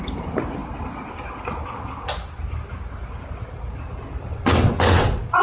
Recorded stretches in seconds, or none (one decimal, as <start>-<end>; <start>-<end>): 0.0-4.3